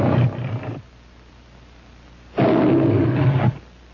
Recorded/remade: recorded